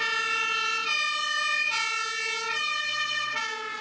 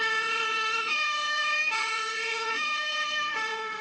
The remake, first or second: second